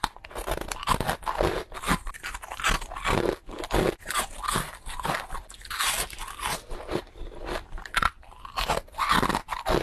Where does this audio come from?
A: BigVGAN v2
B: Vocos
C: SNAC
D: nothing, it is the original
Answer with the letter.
D